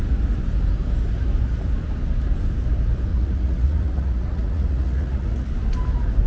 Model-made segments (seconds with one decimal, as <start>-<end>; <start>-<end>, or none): 3.1-5.5